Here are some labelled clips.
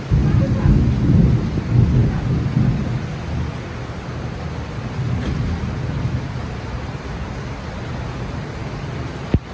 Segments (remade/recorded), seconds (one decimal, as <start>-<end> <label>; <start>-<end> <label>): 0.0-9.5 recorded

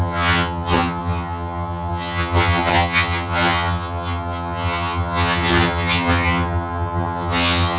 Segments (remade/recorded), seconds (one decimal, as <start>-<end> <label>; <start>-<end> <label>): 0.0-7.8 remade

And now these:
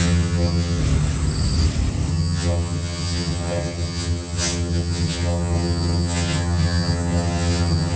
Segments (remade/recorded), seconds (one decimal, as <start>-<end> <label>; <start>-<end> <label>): 0.0-0.8 remade; 0.8-2.1 recorded; 2.1-8.0 remade